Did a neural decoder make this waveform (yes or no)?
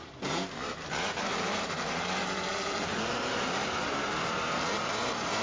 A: yes